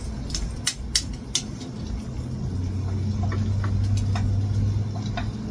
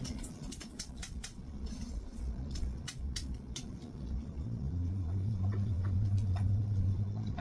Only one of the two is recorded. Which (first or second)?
first